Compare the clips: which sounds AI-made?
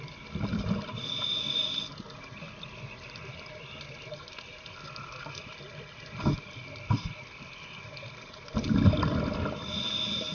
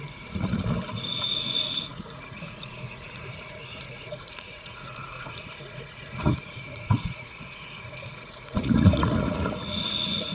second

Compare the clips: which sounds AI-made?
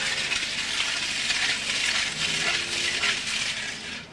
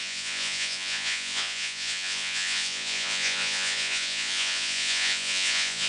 second